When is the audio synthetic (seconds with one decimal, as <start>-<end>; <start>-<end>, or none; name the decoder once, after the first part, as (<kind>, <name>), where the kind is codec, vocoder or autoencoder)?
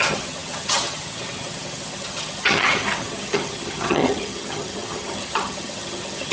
0.0-6.3 (vocoder, HiFi-GAN)